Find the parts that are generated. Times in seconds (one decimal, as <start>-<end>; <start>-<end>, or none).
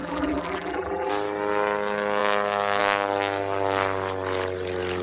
0.0-1.1